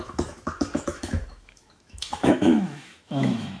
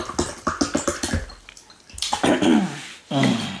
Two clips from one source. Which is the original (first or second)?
second